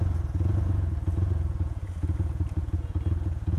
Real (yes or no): no